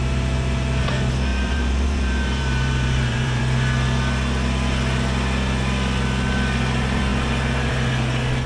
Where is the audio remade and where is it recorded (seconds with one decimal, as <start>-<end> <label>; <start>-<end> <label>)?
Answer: 0.0-1.3 recorded; 1.3-3.4 remade; 3.4-8.5 recorded